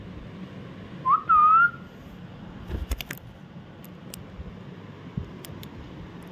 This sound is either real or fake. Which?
real